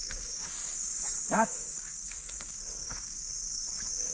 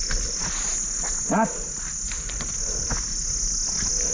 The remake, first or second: first